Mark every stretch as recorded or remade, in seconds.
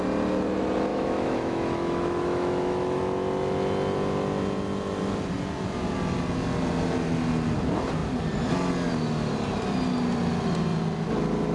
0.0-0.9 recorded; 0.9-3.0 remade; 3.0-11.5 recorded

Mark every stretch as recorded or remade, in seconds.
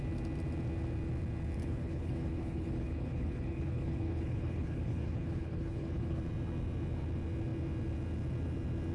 0.0-1.6 recorded; 1.6-6.2 remade; 6.2-8.9 recorded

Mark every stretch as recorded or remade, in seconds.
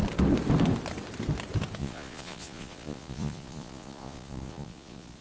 0.0-1.8 recorded; 1.8-5.2 remade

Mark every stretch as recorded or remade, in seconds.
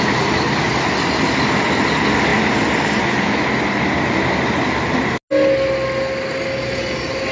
0.0-7.3 recorded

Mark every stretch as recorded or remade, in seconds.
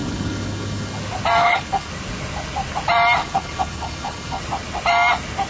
0.0-1.0 remade; 1.0-1.4 recorded; 1.4-1.9 remade; 1.9-3.2 recorded; 3.2-4.4 remade; 4.4-5.5 recorded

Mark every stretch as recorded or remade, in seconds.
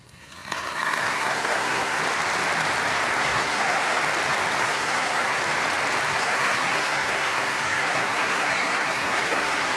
0.0-2.0 remade; 2.0-3.2 recorded; 3.2-4.0 remade; 4.0-4.6 recorded; 4.6-5.4 remade; 5.4-6.1 recorded; 6.1-9.8 remade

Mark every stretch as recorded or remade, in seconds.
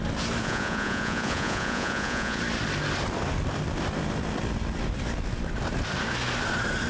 0.0-0.4 recorded; 0.4-2.4 remade; 2.4-6.9 recorded